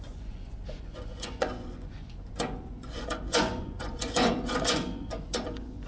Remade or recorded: remade